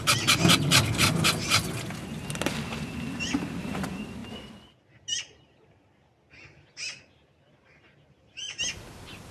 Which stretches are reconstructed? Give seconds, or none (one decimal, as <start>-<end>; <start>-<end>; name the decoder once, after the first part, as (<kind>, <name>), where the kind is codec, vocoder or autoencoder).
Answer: none